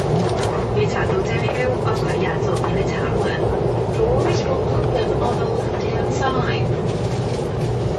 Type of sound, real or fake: real